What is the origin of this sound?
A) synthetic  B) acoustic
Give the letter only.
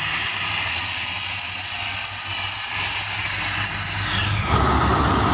B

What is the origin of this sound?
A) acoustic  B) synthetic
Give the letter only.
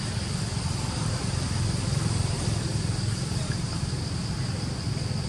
A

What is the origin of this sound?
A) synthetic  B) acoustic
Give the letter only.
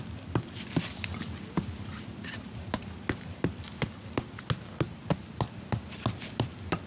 B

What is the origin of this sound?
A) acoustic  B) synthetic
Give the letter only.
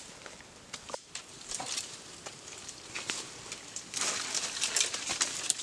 A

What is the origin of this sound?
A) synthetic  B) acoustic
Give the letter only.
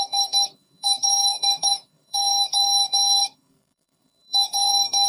A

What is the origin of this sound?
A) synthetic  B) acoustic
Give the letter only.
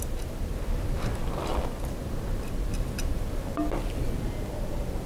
B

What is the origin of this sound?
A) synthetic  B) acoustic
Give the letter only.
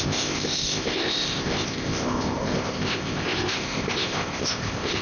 A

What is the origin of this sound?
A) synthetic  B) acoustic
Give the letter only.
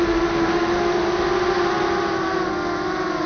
B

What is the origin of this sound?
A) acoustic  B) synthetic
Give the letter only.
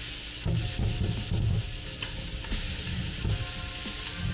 A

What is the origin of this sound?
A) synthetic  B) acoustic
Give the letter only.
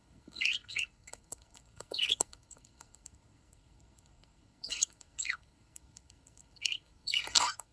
A